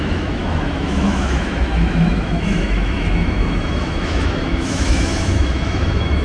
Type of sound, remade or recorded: remade